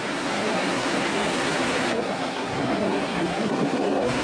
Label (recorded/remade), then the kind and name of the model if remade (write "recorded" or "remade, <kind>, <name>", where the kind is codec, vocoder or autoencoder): remade, codec, SNAC